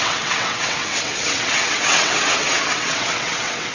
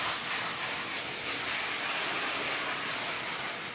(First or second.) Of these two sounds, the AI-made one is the first